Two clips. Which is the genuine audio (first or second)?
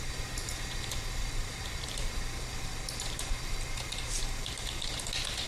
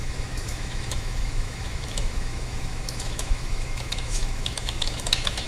first